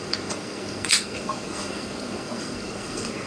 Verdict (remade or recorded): remade